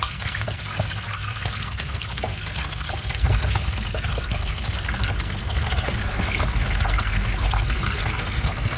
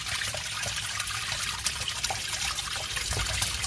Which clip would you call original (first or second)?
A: second